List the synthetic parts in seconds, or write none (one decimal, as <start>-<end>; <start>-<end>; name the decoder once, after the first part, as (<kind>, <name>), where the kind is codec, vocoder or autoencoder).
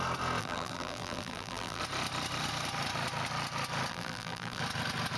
0.4-1.8 (vocoder, BigVGAN v2); 3.9-4.6